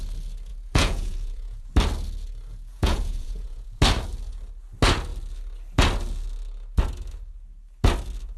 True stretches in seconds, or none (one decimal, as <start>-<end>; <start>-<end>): 0.0-0.5; 1.7-2.5; 3.8-8.4